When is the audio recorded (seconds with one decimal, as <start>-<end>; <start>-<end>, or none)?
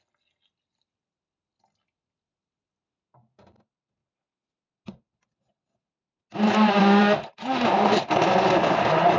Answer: 0.0-9.2